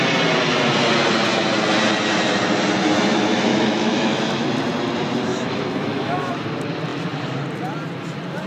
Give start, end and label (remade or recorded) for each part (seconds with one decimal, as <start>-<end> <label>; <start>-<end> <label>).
0.0-3.5 recorded; 3.5-4.5 remade; 4.5-5.3 recorded; 5.3-6.3 remade; 6.3-8.5 recorded